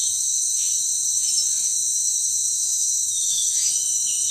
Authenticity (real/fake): fake